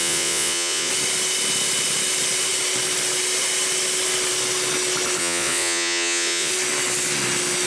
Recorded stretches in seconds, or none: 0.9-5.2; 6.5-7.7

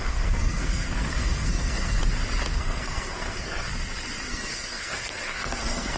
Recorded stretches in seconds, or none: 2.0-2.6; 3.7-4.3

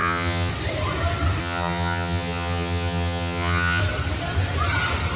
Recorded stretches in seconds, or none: 0.5-1.4; 3.8-5.2